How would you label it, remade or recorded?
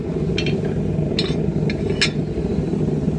recorded